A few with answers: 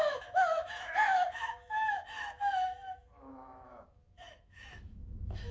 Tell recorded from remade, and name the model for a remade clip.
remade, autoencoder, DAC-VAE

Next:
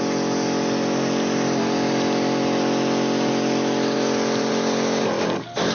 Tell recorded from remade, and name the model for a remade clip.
recorded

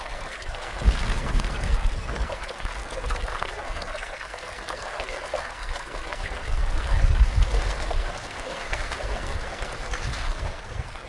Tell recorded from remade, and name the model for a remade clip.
remade, codec, SNAC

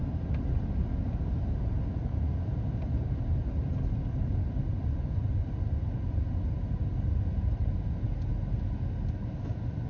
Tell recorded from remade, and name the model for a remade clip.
recorded